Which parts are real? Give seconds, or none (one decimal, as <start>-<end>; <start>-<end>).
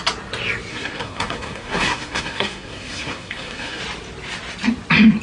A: 0.0-0.7; 3.8-5.2